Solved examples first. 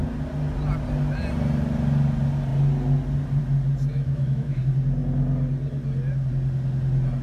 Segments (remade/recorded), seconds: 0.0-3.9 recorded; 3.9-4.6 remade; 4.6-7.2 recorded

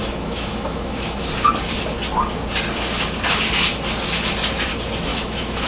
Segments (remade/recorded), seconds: 0.0-1.3 remade; 1.3-5.1 recorded; 5.1-5.7 remade

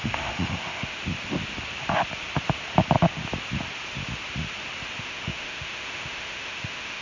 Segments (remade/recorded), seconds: 0.0-1.0 remade; 1.0-5.0 recorded; 5.0-7.0 remade

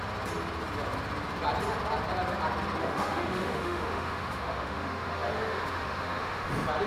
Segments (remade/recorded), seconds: 0.0-2.8 recorded; 2.8-6.5 remade; 6.5-6.9 recorded

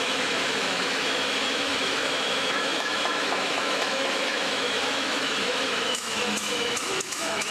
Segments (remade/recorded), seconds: 0.0-7.5 remade